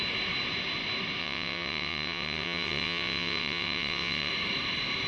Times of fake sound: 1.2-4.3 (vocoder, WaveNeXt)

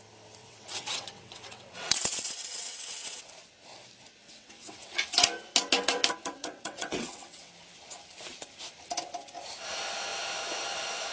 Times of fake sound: 0.4-3.3 (vocoder, WaveNeXt); 4.2-4.9; 6.4-7.5

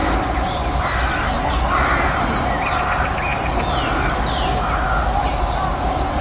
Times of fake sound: none

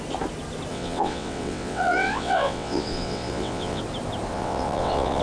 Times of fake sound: 0.7-3.8 (vocoder, WaveNeXt); 4.3-5.2

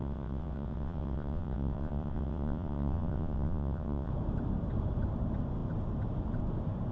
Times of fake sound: 0.0-4.1 (vocoder, WaveNeXt)